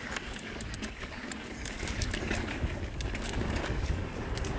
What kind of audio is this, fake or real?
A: fake